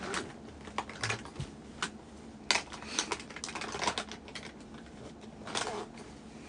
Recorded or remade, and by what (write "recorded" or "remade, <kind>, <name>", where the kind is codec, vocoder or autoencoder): recorded